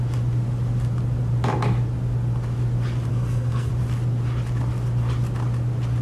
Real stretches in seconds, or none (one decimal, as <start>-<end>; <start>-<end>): 0.0-3.1; 3.7-6.0